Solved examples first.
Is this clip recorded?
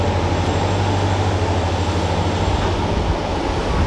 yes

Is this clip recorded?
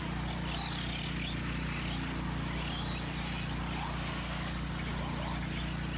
yes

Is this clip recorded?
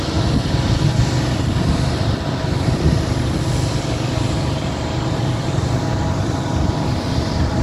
no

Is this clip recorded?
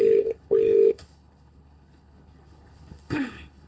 no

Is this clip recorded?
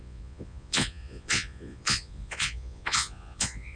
no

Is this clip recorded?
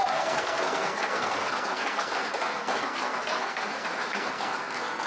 no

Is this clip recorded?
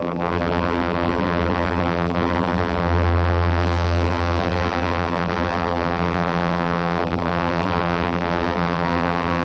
no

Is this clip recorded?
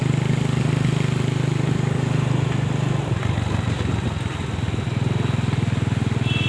yes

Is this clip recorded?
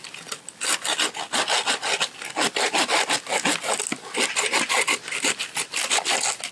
yes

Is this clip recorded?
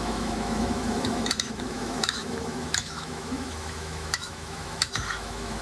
no